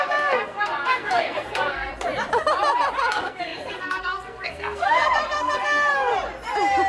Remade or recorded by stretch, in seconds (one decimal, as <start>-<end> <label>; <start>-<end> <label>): 0.0-1.9 remade; 1.9-3.1 recorded; 3.1-6.1 remade; 6.1-6.9 recorded